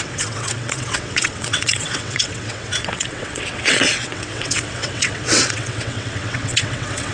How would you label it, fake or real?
fake